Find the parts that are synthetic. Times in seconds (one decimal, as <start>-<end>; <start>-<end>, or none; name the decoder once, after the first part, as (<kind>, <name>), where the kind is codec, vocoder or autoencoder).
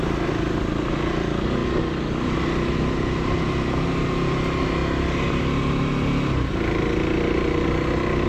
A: none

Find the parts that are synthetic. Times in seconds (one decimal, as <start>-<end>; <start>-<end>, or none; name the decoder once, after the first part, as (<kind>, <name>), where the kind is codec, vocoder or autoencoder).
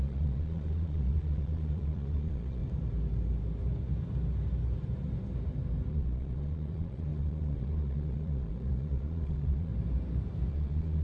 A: 0.0-2.6 (vocoder, Vocos); 5.9-9.7; 10.5-11.0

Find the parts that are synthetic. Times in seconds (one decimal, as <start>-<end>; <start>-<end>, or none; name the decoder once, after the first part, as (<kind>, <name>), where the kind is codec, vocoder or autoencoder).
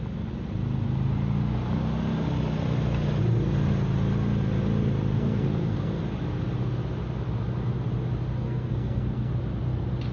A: 5.1-6.0 (codec, SNAC); 8.4-9.3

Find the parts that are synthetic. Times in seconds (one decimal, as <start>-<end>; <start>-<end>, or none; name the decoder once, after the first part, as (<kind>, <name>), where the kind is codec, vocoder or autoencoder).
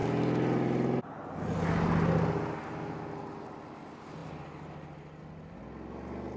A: none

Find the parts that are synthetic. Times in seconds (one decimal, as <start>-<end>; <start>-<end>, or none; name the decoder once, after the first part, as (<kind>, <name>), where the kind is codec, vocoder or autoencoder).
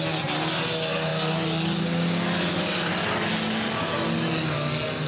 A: none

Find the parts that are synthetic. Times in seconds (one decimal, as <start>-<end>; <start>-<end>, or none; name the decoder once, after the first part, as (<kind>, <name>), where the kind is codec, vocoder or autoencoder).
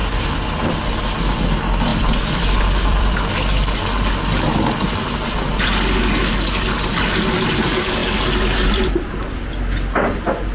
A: 1.9-3.3 (vocoder, BigVGAN v2); 8.0-9.0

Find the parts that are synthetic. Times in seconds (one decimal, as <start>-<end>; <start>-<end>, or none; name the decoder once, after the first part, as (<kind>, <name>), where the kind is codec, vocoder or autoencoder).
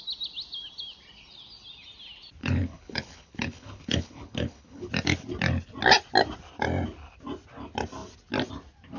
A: 2.4-4.9 (codec, HILCodec)